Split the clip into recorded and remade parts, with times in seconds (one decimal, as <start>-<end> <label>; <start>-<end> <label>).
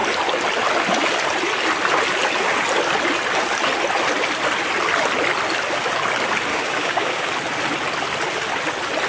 0.0-6.5 recorded; 6.5-7.3 remade; 7.3-9.1 recorded